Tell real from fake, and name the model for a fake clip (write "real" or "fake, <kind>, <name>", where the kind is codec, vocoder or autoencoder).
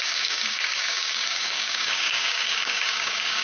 fake, codec, DAC